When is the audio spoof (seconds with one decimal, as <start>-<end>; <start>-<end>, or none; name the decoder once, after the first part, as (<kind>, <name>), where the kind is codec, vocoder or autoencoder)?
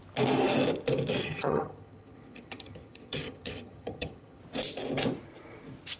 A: 1.2-4.4 (vocoder, HiFi-GAN)